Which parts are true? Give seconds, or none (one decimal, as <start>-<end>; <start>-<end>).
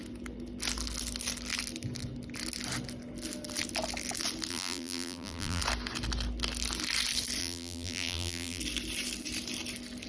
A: 0.0-4.5; 5.6-7.4; 8.6-10.1